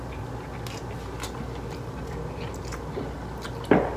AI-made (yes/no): no